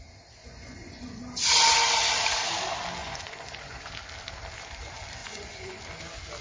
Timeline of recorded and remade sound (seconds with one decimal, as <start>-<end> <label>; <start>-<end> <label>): 0.0-0.4 recorded; 0.4-1.2 remade; 1.2-3.0 recorded; 3.0-3.9 remade; 3.9-5.2 recorded; 5.2-5.8 remade; 5.8-6.4 recorded